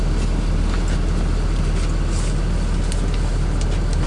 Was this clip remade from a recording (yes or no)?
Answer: no